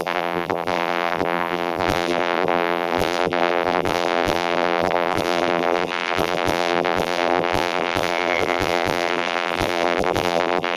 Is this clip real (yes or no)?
no